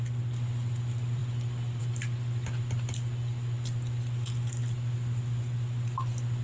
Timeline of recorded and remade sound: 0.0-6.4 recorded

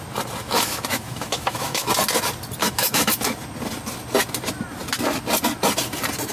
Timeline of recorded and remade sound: 0.0-0.4 recorded; 0.4-1.9 remade; 1.9-2.6 recorded; 2.6-3.1 remade; 3.1-6.3 recorded

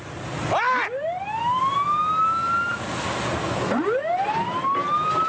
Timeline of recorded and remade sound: 0.0-5.3 recorded

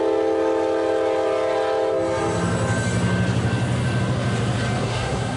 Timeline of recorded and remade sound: 0.0-4.8 recorded; 4.8-5.4 remade

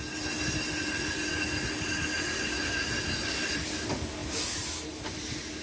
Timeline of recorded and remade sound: 0.0-5.6 recorded

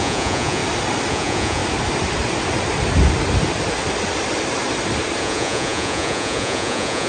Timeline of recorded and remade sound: 0.0-0.6 remade; 0.6-1.1 recorded; 1.1-1.6 remade; 1.6-5.2 recorded; 5.2-7.1 remade

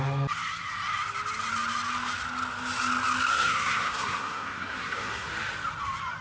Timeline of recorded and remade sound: 0.0-3.3 recorded; 3.3-5.3 remade; 5.3-6.2 recorded